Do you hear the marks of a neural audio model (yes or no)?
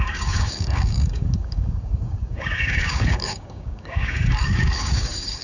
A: yes